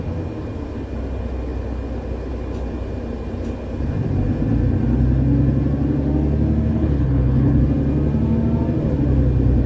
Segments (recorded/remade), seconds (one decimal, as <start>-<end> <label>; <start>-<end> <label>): 0.0-6.7 recorded; 6.7-7.6 remade; 7.6-9.7 recorded